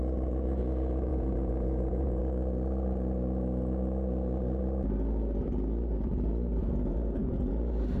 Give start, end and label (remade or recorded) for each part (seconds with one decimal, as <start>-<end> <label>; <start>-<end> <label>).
0.0-1.1 recorded; 1.1-2.2 remade; 2.2-6.6 recorded; 6.6-7.5 remade; 7.5-8.0 recorded